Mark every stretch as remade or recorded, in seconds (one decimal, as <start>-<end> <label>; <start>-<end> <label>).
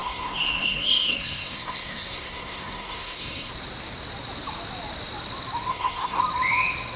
0.0-3.5 remade; 3.5-5.7 recorded; 5.7-6.2 remade; 6.2-7.0 recorded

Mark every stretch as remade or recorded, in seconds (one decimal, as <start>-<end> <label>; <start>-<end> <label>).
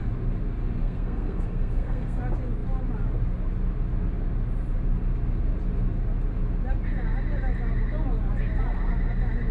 0.0-0.8 recorded; 0.8-2.2 remade; 2.2-9.5 recorded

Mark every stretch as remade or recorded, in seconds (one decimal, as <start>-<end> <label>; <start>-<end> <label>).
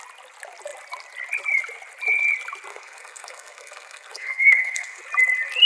0.0-2.7 recorded; 2.7-5.0 remade; 5.0-5.7 recorded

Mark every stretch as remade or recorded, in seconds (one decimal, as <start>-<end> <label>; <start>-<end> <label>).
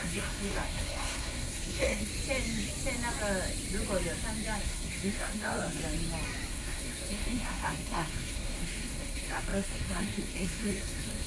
0.0-2.1 remade; 2.1-4.6 recorded; 4.6-5.8 remade; 5.8-6.5 recorded; 6.5-11.3 remade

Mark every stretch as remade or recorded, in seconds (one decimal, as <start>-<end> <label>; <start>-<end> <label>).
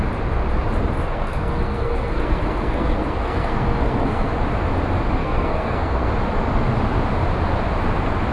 0.0-1.0 recorded; 1.0-4.3 remade; 4.3-5.2 recorded; 5.2-6.1 remade; 6.1-8.3 recorded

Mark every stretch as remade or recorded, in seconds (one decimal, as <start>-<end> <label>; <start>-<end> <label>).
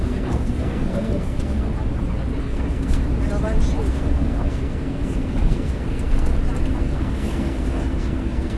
0.0-1.7 remade; 1.7-2.4 recorded; 2.4-3.1 remade; 3.1-3.9 recorded; 3.9-6.3 remade; 6.3-6.8 recorded; 6.8-8.6 remade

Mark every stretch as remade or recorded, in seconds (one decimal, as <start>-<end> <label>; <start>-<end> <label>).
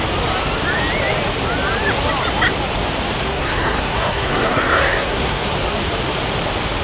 0.0-3.3 recorded; 3.3-5.5 remade; 5.5-6.8 recorded